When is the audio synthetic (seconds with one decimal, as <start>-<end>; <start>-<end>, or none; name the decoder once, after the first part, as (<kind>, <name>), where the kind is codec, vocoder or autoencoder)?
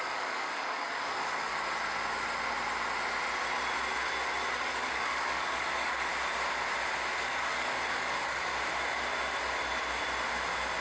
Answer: 0.0-1.5 (codec, DAC); 4.6-6.1; 7.2-8.5